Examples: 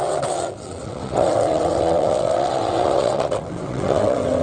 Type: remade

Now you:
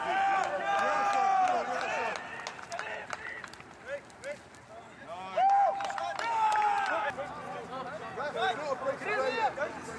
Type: recorded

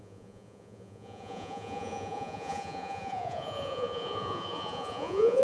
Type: remade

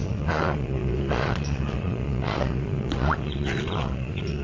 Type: remade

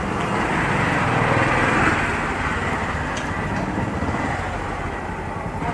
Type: recorded